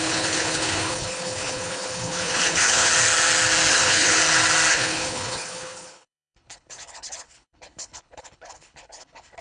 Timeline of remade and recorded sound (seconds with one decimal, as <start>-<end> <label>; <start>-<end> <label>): 0.0-2.9 remade; 2.9-3.7 recorded; 3.7-4.2 remade; 4.2-4.7 recorded; 4.7-9.4 remade